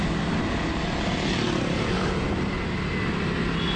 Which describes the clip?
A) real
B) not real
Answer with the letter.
A